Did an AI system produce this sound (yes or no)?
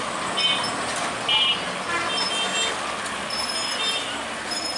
no